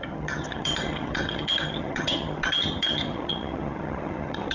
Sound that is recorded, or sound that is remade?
remade